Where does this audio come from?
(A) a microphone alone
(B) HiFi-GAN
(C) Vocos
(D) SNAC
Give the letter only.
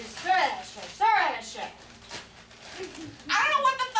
A